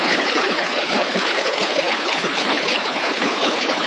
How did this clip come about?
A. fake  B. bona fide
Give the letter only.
A